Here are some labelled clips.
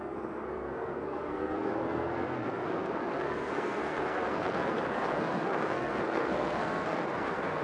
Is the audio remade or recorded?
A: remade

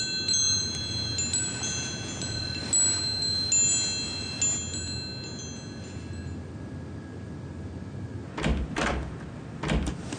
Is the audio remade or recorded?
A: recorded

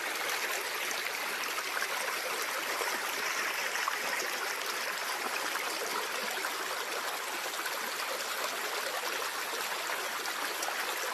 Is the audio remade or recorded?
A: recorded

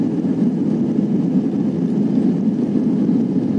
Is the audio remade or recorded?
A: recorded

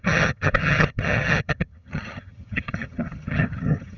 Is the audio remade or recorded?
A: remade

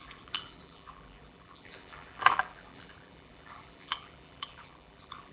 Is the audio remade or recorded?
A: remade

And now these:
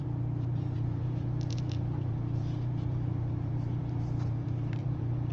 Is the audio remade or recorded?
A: remade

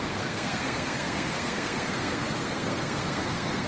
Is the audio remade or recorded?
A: remade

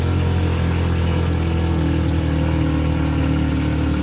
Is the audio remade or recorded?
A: recorded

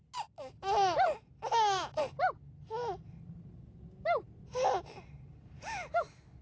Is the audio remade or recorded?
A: recorded